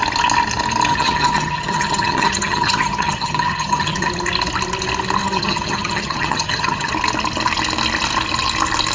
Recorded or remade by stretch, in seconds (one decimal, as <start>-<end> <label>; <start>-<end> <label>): 0.0-0.9 recorded; 0.9-4.1 remade; 4.1-5.2 recorded; 5.2-6.9 remade; 6.9-8.9 recorded

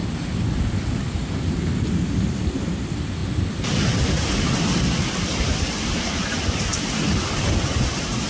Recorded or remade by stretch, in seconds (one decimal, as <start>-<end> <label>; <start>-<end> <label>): 0.0-8.3 recorded

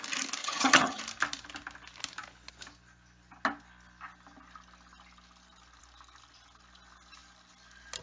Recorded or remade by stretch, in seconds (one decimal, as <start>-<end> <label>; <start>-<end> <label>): 0.0-0.4 recorded; 0.4-1.0 remade; 1.0-8.0 recorded

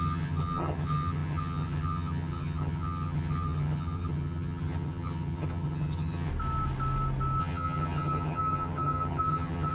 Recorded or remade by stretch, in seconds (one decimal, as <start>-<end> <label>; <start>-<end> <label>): 0.0-6.3 remade; 6.3-7.4 recorded; 7.4-9.7 remade